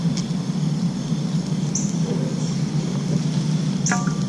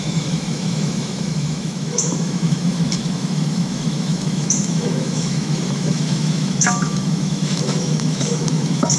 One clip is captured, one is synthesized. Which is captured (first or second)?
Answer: first